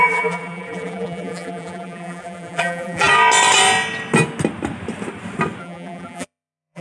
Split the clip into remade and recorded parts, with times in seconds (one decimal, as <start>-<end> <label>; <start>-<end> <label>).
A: 0.0-3.1 remade; 3.1-5.6 recorded; 5.6-6.8 remade